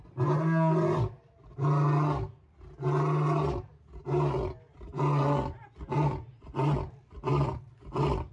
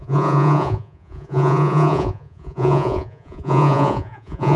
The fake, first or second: second